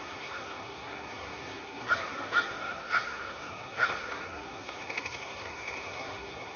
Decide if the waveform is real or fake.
fake